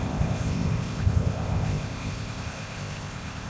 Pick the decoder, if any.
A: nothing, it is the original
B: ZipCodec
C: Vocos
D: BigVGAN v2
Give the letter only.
B